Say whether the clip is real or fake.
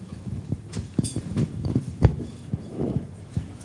fake